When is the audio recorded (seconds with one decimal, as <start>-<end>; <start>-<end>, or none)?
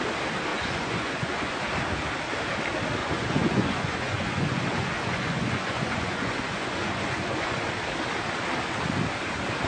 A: 0.0-0.5; 1.6-3.0; 7.6-9.7